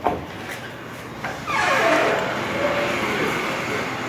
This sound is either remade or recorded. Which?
recorded